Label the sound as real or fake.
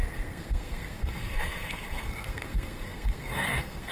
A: fake